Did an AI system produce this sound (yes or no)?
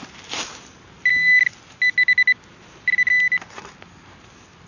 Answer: no